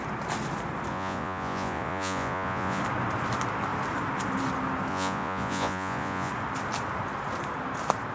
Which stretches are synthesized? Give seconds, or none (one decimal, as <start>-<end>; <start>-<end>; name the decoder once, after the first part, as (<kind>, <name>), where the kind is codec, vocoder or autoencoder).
0.9-2.8 (vocoder, Vocos); 4.9-6.3